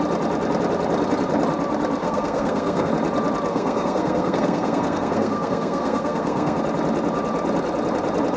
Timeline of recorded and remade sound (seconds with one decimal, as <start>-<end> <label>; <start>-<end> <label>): 0.0-2.0 recorded; 2.0-2.9 remade; 2.9-3.5 recorded; 3.5-6.6 remade; 6.6-8.4 recorded